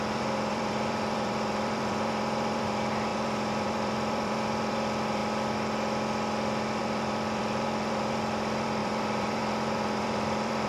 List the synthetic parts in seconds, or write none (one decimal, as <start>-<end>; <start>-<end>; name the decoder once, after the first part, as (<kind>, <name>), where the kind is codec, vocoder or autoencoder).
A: 0.0-5.2 (vocoder, BigVGAN v2); 6.8-10.7